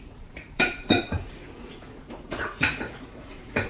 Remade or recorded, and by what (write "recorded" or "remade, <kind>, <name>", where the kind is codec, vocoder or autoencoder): remade, vocoder, Vocos